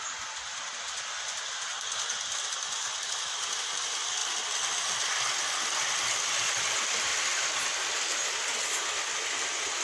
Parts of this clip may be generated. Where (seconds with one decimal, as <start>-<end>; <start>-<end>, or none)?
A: 0.0-4.2; 4.8-7.1; 7.7-9.8